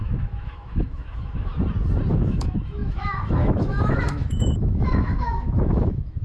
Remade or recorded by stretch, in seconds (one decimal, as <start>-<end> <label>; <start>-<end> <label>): 0.0-1.5 remade; 1.5-2.1 recorded; 2.1-6.2 remade